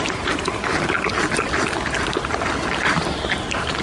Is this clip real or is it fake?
real